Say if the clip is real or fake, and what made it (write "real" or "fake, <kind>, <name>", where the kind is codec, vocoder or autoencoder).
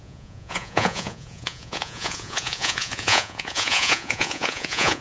fake, vocoder, Vocos